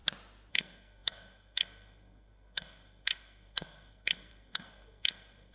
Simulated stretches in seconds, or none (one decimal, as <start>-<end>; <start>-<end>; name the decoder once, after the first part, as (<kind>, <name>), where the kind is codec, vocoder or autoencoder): 0.5-5.5 (codec, SNAC)